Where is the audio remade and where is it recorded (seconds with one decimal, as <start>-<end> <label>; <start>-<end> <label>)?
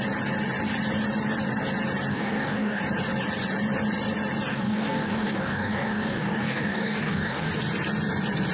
0.0-2.1 recorded; 2.1-2.8 remade; 2.8-4.5 recorded; 4.5-7.5 remade; 7.5-8.5 recorded